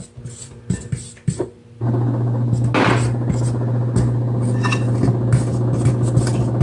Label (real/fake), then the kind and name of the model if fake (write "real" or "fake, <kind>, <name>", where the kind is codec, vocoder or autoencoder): real